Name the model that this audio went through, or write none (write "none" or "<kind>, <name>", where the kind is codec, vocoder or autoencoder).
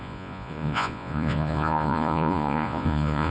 vocoder, Vocos